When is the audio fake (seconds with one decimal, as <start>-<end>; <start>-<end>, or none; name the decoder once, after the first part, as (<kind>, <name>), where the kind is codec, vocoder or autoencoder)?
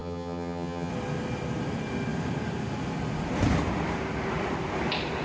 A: 0.0-0.9 (vocoder, HiFi-GAN)